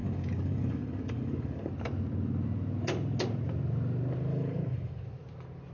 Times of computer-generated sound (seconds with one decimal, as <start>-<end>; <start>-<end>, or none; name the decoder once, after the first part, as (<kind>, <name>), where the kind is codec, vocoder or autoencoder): 0.0-1.7 (codec, DAC); 4.3-4.9